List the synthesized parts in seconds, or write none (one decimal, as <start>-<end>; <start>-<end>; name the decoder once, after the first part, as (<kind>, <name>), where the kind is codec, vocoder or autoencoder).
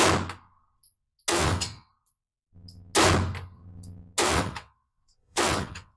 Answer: 1.3-1.9 (vocoder, WaveNeXt); 4.2-6.0